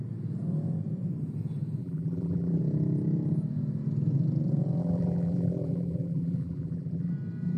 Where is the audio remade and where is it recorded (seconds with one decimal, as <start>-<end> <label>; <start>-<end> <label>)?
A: 0.0-1.8 recorded; 1.8-2.6 remade; 2.6-4.8 recorded; 4.8-7.1 remade; 7.1-7.6 recorded